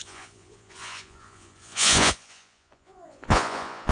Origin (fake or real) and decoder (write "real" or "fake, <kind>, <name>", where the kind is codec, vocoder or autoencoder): fake, vocoder, Vocos